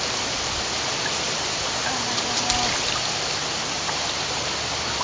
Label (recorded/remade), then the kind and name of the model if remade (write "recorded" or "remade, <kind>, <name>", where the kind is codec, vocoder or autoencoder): recorded